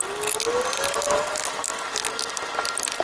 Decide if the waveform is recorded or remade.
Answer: recorded